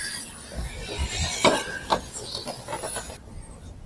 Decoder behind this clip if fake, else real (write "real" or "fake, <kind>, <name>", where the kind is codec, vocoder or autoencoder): real